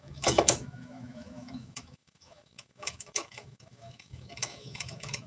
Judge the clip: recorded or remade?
remade